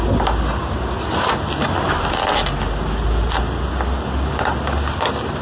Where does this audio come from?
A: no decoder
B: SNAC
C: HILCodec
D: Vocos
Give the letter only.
A